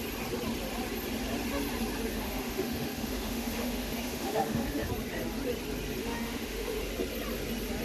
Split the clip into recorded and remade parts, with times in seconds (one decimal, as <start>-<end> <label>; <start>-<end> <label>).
0.0-2.1 recorded; 2.1-4.9 remade; 4.9-6.0 recorded; 6.0-6.8 remade; 6.8-7.8 recorded